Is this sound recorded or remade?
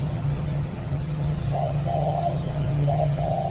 remade